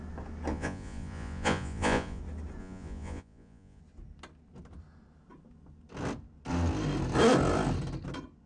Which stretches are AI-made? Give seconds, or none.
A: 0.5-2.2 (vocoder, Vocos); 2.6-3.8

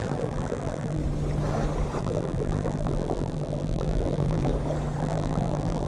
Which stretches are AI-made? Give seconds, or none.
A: 0.0-1.0 (vocoder, BigVGAN v2); 2.0-4.5; 5.0-5.9

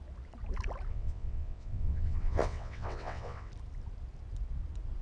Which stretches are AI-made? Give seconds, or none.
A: 0.9-3.5 (vocoder, WaveNeXt)

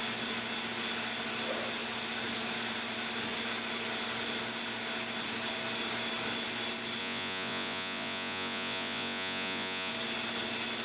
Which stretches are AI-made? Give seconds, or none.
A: 7.0-9.9 (vocoder, Vocos)

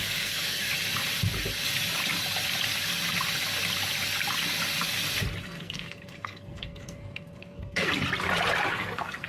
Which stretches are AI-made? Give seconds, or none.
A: 0.0-0.7 (codec, SNAC); 5.4-7.9; 8.7-9.3